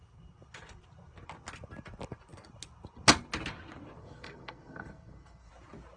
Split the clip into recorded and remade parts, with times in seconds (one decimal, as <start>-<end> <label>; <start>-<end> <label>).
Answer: 0.0-4.0 recorded; 4.0-5.5 remade; 5.5-6.0 recorded